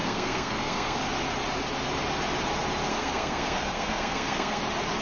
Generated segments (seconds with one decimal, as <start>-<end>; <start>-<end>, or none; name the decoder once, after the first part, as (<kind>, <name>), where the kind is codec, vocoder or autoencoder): 0.0-1.0 (codec, SNAC); 2.9-4.6

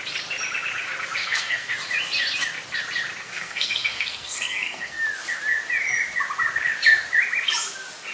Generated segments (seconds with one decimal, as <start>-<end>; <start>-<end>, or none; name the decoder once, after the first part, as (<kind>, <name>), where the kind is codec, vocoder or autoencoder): 1.2-1.7 (codec, SNAC); 3.2-5.0

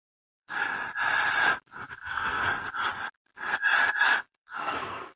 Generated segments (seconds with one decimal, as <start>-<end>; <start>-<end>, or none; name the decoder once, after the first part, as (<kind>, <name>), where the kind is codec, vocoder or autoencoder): 0.0-0.7 (codec, SNAC); 1.9-2.4; 4.2-5.2

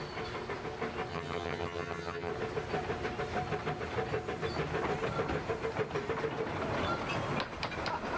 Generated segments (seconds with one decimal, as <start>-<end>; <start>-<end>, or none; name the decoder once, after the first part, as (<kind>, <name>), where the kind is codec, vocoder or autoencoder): 1.1-2.3 (vocoder, HiFi-GAN)

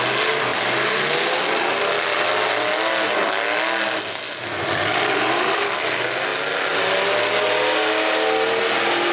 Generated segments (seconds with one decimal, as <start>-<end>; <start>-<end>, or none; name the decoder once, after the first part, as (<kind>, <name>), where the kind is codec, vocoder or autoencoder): none

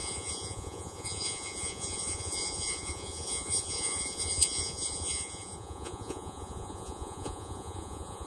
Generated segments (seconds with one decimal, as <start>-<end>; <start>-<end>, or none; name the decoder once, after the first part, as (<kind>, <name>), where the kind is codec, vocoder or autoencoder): 0.0-8.3 (vocoder, Vocos)

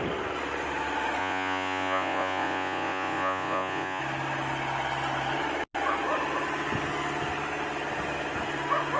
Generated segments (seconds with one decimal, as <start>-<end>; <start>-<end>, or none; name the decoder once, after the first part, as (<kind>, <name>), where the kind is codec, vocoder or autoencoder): 1.2-4.0 (vocoder, Vocos)

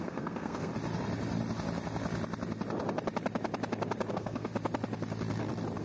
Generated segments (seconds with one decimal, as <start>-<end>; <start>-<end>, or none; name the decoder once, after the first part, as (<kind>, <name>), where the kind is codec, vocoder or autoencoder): 0.0-0.7 (codec, SNAC); 4.1-4.5